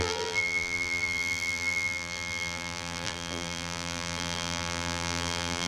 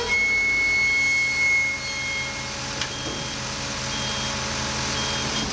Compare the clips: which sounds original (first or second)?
second